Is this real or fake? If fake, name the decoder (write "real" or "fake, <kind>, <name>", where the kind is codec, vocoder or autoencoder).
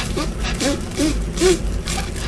real